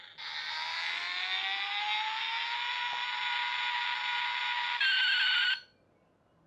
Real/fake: real